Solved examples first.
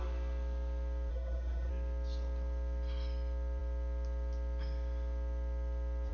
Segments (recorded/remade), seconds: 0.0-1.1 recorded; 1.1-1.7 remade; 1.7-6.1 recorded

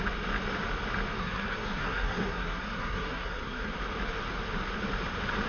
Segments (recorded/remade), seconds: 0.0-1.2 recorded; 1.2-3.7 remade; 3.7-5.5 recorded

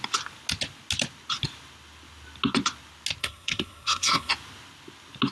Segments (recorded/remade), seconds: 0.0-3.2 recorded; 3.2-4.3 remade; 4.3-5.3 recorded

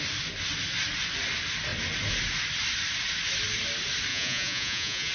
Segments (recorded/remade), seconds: 0.0-4.1 recorded; 4.1-5.1 remade

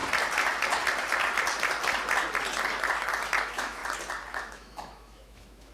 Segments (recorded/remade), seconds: 0.0-3.4 recorded; 3.4-3.8 remade; 3.8-4.4 recorded; 4.4-5.7 remade

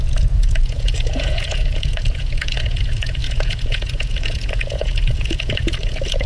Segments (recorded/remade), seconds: 0.0-6.3 remade